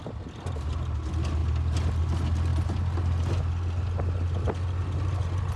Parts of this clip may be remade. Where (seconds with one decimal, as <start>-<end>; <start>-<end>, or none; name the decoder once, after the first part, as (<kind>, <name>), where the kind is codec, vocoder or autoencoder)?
none